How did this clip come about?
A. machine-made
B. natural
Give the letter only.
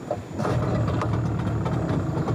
B